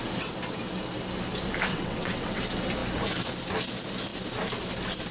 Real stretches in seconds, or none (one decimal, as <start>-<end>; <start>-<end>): 0.0-1.7; 2.4-5.1